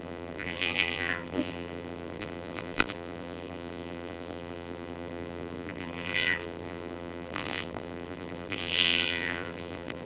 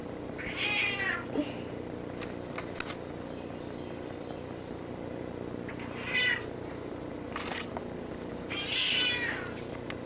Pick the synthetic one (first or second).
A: first